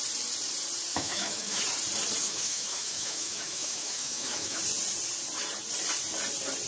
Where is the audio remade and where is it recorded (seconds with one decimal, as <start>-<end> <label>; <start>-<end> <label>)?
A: 0.0-0.9 recorded; 0.9-1.6 remade; 1.6-2.2 recorded; 2.2-4.6 remade; 4.6-6.7 recorded